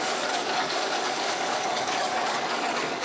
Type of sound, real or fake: fake